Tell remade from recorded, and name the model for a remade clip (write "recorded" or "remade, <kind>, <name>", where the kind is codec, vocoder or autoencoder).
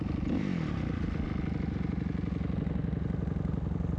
recorded